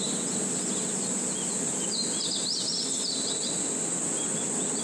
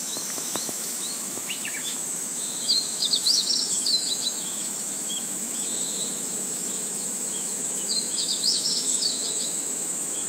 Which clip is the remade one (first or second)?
second